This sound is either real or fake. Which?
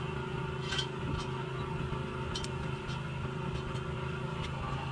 real